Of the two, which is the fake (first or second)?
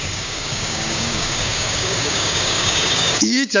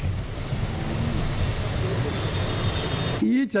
first